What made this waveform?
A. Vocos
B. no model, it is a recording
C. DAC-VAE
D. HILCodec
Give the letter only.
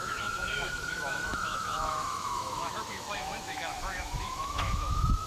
C